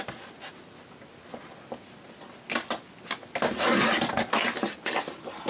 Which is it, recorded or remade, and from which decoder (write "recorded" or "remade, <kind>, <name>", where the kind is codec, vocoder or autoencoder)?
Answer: recorded